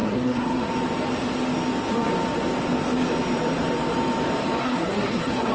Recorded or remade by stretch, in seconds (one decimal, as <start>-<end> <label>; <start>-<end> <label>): 0.0-0.7 remade; 0.7-4.6 recorded; 4.6-5.5 remade